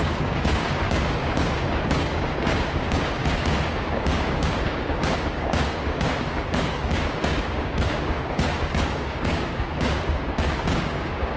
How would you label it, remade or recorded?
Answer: remade